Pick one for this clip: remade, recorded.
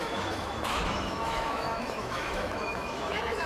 remade